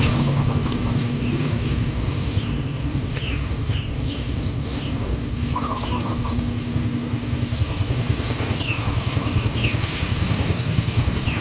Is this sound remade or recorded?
remade